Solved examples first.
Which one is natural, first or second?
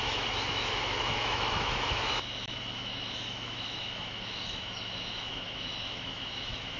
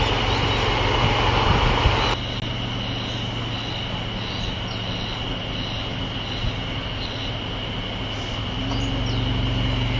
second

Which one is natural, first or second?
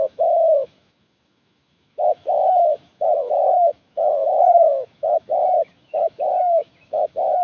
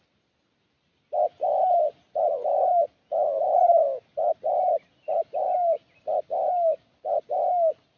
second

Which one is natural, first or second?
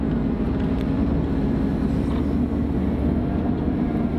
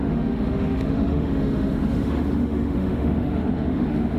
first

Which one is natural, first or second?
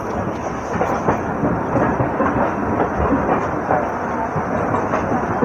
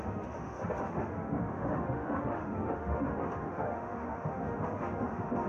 first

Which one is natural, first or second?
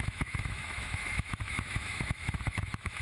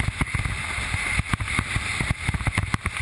second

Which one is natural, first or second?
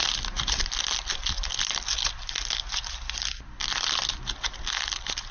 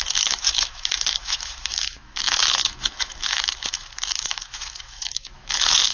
first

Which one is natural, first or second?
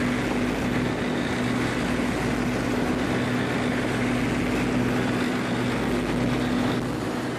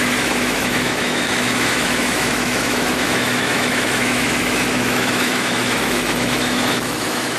first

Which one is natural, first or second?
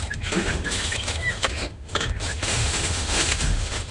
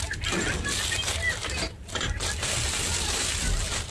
second